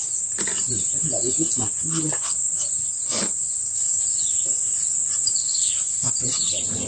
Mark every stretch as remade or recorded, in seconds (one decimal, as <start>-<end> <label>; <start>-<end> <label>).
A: 0.0-5.4 recorded; 5.4-6.1 remade; 6.1-6.9 recorded

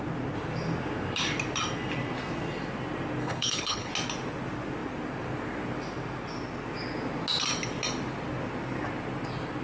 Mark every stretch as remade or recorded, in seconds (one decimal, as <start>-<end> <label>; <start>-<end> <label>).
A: 0.0-3.2 recorded; 3.2-3.9 remade; 3.9-9.6 recorded

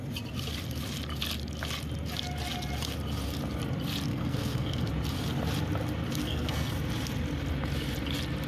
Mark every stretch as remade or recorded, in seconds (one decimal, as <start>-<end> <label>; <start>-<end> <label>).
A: 0.0-4.1 recorded; 4.1-4.9 remade; 4.9-6.2 recorded; 6.2-6.7 remade; 6.7-8.5 recorded